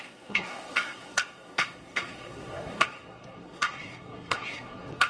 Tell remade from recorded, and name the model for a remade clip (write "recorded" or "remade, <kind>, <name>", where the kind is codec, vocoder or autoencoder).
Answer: remade, codec, SNAC